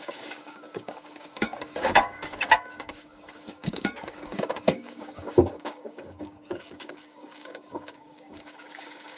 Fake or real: fake